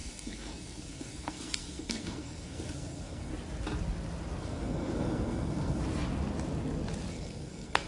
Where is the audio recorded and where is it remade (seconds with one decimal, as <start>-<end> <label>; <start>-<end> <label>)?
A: 0.0-3.3 remade; 3.3-4.4 recorded; 4.4-5.8 remade; 5.8-7.1 recorded; 7.1-7.9 remade